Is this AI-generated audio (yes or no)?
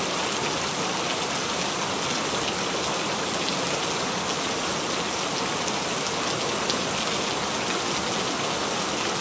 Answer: no